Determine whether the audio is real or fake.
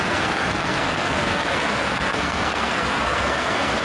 fake